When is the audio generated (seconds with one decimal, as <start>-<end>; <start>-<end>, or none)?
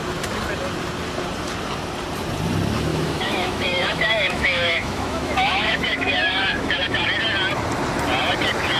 2.9-7.0